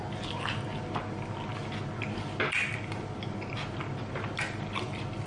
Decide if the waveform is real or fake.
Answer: real